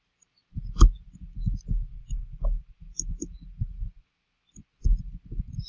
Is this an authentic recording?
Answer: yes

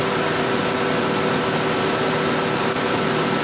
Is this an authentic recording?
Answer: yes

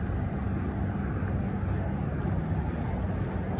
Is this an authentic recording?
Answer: yes